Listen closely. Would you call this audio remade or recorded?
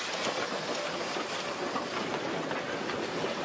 recorded